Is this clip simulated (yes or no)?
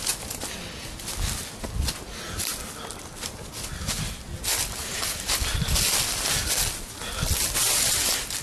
no